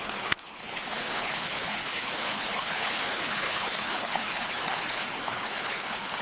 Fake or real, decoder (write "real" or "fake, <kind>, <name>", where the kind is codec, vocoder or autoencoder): fake, codec, HILCodec